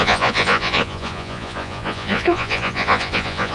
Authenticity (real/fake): fake